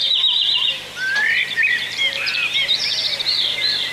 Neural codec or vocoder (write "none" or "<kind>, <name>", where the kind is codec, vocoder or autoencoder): vocoder, BigVGAN v2